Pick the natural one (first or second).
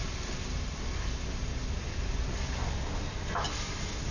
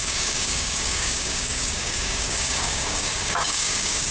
first